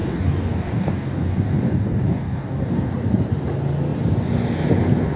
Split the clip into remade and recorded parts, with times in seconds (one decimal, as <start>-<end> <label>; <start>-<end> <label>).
0.0-2.9 remade; 2.9-5.2 recorded